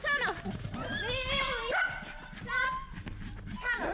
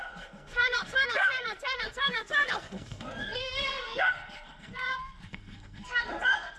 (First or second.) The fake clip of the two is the second